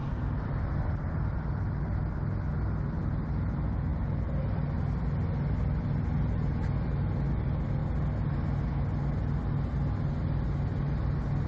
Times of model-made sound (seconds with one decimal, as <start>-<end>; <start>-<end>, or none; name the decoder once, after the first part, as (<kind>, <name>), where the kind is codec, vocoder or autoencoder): none